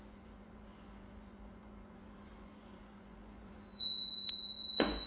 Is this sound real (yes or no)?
no